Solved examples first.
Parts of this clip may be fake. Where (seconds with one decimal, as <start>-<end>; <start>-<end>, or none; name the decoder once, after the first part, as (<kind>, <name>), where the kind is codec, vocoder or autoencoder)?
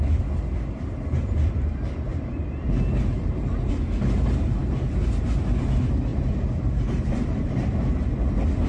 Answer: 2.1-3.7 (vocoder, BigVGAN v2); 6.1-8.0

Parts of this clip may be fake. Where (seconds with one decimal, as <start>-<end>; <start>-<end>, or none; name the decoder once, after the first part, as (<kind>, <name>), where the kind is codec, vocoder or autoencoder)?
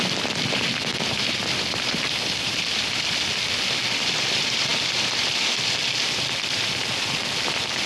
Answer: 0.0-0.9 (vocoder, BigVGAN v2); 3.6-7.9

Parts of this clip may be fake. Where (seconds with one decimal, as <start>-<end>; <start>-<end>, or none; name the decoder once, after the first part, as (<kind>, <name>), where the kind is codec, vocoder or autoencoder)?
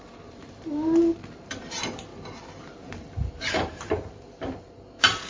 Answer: 0.0-2.1 (vocoder, BigVGAN v2); 2.6-5.3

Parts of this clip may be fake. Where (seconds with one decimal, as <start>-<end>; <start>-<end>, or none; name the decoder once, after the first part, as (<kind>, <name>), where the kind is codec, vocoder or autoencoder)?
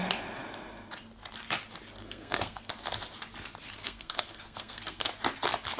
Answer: 2.0-2.7 (codec, SNAC); 3.8-5.1